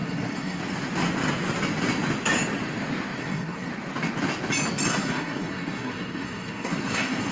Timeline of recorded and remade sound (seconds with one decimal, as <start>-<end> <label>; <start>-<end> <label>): 0.0-0.6 remade; 0.6-3.2 recorded; 3.2-3.7 remade; 3.7-4.9 recorded; 4.9-7.3 remade